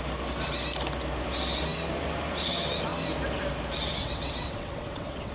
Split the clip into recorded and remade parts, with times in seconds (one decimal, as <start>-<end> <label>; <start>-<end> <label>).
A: 0.0-4.0 recorded; 4.0-5.3 remade